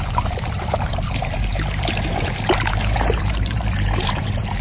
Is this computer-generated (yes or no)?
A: yes